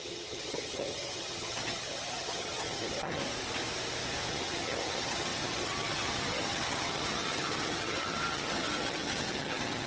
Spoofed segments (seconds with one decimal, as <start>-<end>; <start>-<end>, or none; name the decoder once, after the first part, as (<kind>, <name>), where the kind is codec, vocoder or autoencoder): 0.0-3.2 (vocoder, HiFi-GAN); 4.3-9.9